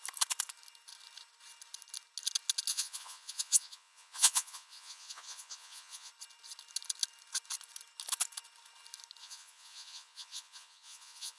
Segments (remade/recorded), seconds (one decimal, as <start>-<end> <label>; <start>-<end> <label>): 0.0-2.7 recorded; 2.7-6.1 remade; 6.1-9.2 recorded; 9.2-11.4 remade